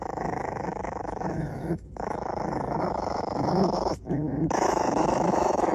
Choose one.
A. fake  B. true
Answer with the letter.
A